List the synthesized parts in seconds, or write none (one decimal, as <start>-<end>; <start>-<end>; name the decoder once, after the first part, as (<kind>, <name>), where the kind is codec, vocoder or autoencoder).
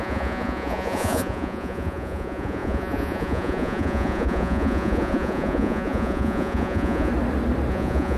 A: 0.0-7.1 (vocoder, Vocos); 7.7-8.2